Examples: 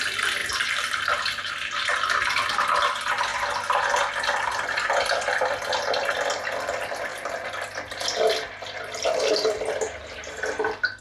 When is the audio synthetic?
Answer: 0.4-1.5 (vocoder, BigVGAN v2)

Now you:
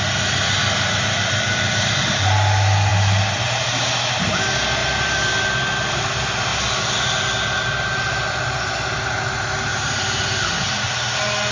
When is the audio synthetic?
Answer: 4.8-5.4 (vocoder, BigVGAN v2); 9.7-10.4

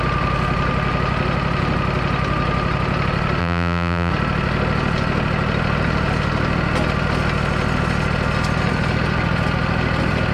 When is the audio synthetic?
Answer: 3.4-4.1 (vocoder, BigVGAN v2)

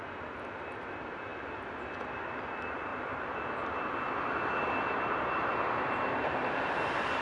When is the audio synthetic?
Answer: 0.0-1.3 (vocoder, BigVGAN v2); 2.4-7.2

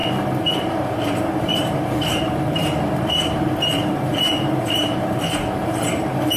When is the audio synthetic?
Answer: 1.4-6.4 (vocoder, BigVGAN v2)

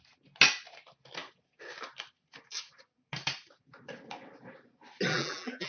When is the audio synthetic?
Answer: 5.1-5.7 (vocoder, BigVGAN v2)